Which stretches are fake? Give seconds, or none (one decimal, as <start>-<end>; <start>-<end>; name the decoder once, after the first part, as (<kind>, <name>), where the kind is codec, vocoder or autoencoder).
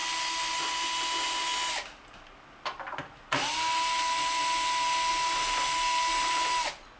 none